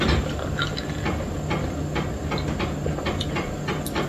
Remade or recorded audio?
recorded